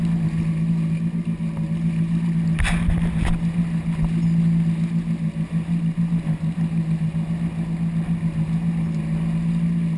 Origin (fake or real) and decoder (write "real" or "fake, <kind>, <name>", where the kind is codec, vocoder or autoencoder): real